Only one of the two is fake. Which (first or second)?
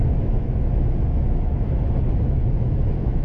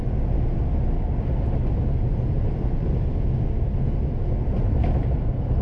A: first